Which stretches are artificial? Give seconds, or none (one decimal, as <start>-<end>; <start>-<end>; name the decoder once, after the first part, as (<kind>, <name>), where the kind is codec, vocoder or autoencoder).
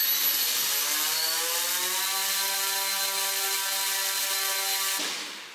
none